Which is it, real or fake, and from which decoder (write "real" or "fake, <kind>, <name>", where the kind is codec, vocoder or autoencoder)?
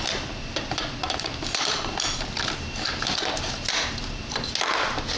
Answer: real